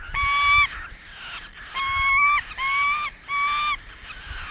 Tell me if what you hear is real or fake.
real